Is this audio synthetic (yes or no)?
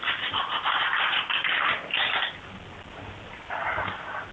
no